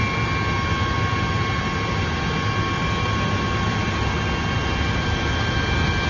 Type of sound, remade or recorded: recorded